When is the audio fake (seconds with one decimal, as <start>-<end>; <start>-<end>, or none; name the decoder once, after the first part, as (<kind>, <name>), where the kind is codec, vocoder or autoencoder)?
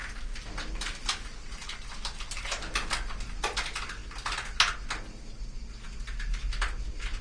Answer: 0.0-2.9 (vocoder, BigVGAN v2)